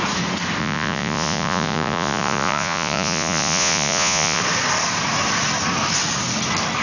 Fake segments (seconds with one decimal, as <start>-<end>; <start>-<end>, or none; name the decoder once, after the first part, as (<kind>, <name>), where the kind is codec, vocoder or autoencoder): 0.6-4.4 (vocoder, Vocos)